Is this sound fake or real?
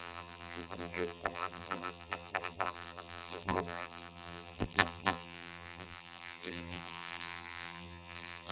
fake